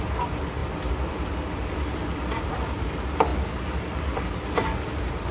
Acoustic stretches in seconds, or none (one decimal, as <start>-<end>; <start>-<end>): 0.0-0.6; 2.5-5.3